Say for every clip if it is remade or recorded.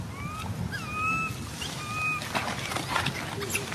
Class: recorded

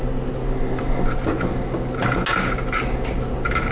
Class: recorded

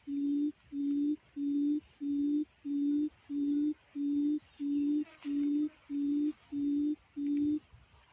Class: recorded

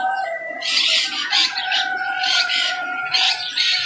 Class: remade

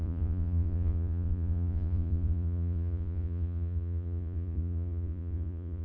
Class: remade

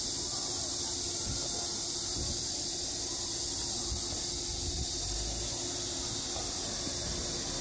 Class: recorded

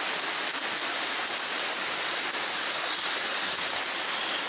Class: recorded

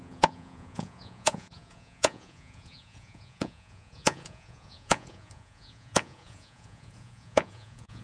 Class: remade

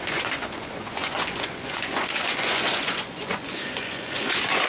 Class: remade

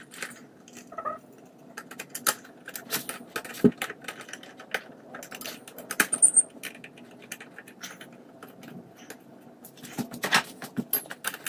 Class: recorded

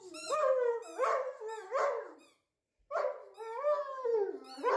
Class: recorded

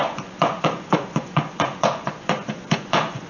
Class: remade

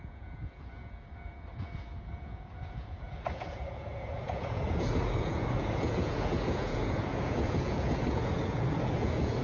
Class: remade